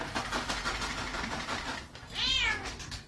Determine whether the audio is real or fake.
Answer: real